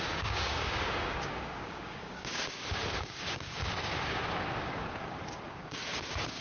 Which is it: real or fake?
fake